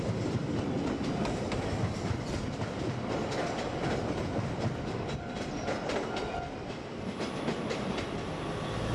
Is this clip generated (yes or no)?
no